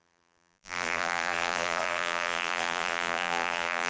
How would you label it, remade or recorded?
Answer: remade